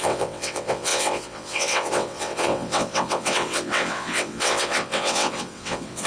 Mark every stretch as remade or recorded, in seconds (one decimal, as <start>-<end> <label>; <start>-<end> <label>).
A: 0.0-6.1 remade